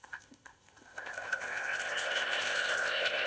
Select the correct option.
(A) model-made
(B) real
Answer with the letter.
A